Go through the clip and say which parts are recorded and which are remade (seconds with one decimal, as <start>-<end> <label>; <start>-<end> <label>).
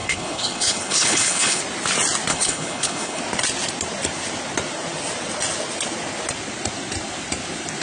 0.0-1.6 remade; 1.6-2.3 recorded; 2.3-3.2 remade; 3.2-7.8 recorded